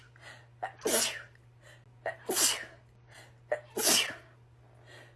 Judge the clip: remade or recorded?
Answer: recorded